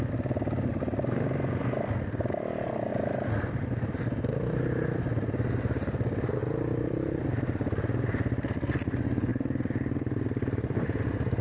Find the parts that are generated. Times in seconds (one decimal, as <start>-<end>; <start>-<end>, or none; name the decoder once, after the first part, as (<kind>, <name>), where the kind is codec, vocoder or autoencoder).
2.9-3.7 (vocoder, BigVGAN v2); 6.4-7.4; 9.3-11.0